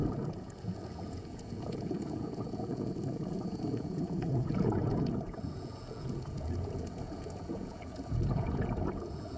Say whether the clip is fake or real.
fake